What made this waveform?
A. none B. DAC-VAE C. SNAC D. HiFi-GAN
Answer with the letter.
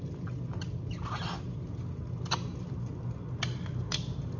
A